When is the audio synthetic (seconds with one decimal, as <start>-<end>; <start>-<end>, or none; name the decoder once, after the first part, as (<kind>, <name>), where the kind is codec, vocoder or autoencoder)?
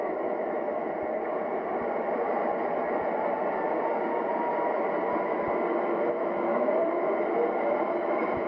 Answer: 0.0-0.8 (autoencoder, DAC-VAE); 5.9-6.8; 7.8-8.5